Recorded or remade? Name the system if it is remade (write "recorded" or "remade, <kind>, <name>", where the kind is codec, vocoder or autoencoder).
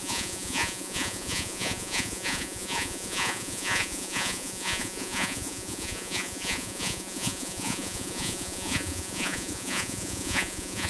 remade, vocoder, Vocos